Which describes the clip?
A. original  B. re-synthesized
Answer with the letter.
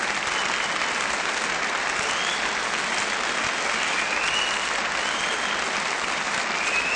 A